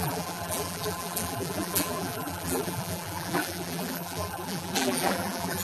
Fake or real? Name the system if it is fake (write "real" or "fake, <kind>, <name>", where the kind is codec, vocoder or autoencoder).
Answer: fake, vocoder, BigVGAN v2